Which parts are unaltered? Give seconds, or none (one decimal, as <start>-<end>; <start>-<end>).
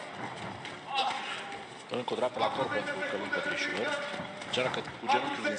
0.0-5.6